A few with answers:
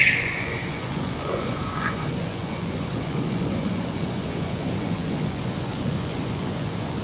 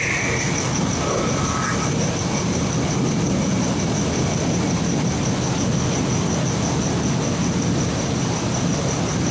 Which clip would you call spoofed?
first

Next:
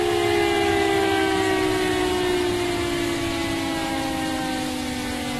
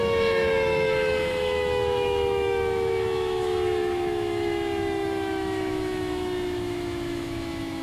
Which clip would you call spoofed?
second